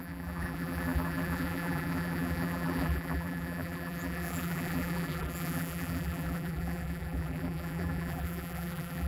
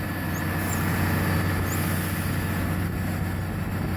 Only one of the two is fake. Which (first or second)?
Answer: first